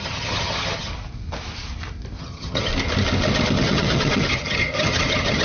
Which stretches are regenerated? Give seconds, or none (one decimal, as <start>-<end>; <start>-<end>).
0.0-0.9; 2.2-2.7; 3.6-5.4